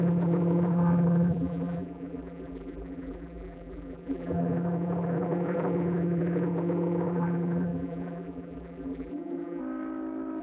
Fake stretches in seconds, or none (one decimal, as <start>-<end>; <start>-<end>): 0.0-9.6